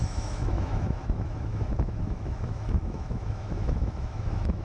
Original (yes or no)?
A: no